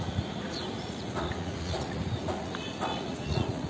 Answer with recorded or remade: remade